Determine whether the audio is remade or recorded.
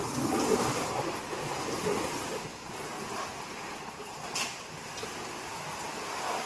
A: recorded